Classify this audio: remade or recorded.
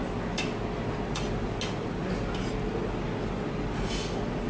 recorded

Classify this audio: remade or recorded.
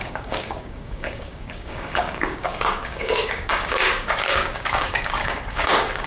remade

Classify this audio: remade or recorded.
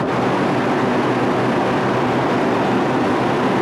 recorded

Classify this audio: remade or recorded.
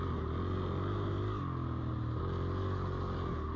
recorded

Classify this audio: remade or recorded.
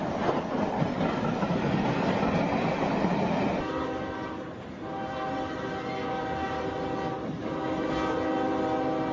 recorded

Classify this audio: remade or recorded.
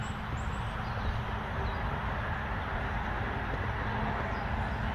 recorded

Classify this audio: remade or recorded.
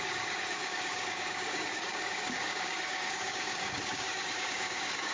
remade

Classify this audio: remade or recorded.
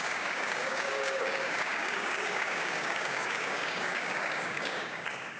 remade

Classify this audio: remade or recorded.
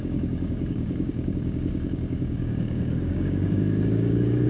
remade